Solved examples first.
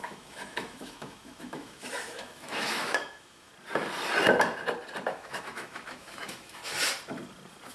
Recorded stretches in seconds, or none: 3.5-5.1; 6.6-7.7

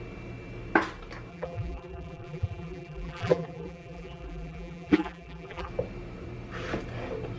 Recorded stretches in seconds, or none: 0.0-1.3; 5.7-7.4

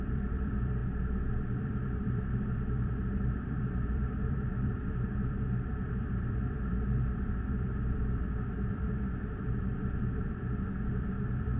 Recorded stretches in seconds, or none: 0.8-1.6

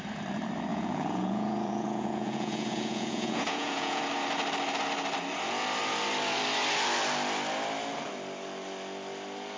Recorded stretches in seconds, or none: 0.0-0.7; 4.0-9.6

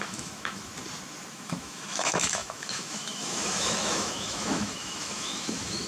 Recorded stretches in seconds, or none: 0.7-1.3

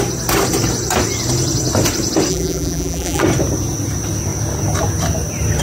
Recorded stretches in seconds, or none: 0.0-2.3; 3.2-5.6